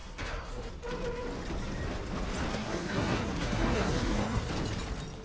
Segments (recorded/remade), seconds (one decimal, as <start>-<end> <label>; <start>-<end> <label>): 0.0-0.7 remade; 0.7-2.5 recorded; 2.5-4.5 remade; 4.5-5.2 recorded

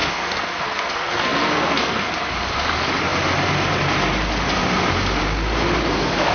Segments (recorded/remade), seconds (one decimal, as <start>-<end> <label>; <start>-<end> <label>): 0.0-2.1 remade; 2.1-6.3 recorded